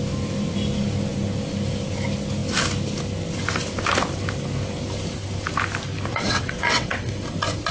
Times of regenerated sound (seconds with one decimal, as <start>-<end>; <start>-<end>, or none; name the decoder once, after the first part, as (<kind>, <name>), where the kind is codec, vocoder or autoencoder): 6.1-7.1 (vocoder, WaveNeXt)